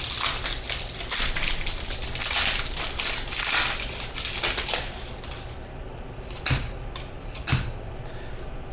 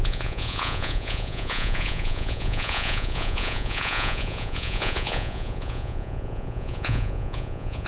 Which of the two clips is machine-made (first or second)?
second